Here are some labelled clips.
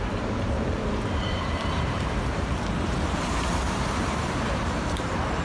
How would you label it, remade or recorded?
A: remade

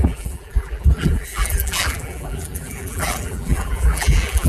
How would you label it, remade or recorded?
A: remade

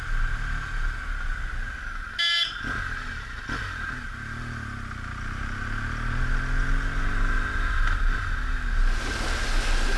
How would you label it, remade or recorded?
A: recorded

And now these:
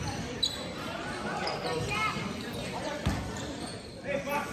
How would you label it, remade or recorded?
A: remade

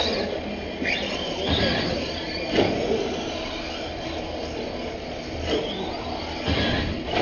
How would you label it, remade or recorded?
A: recorded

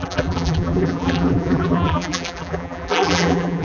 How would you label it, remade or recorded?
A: remade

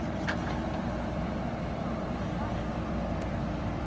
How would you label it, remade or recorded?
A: remade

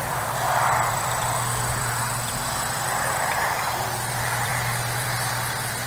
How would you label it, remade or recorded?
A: remade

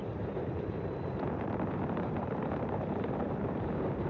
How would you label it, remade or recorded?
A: remade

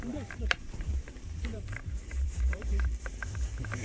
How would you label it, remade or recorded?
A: remade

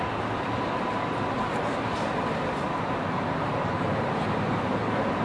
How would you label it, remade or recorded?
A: remade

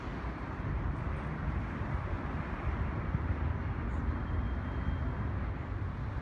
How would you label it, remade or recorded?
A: recorded